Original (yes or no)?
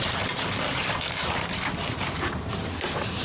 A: yes